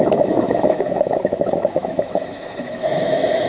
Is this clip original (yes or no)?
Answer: no